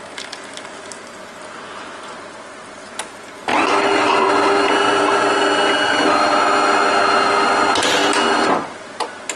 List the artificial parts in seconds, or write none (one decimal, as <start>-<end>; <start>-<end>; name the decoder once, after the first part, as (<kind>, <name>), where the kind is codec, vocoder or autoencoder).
none